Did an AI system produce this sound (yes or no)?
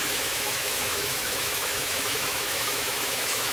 yes